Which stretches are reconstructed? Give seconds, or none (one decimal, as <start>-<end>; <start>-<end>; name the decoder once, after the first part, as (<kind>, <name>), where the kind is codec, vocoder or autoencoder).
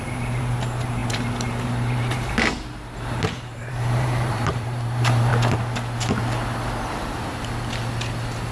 0.0-5.3 (vocoder, BigVGAN v2)